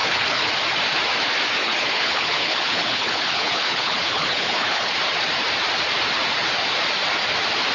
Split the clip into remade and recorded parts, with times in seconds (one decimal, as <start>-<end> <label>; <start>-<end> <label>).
0.0-0.5 remade; 0.5-1.6 recorded; 1.6-4.9 remade; 4.9-7.7 recorded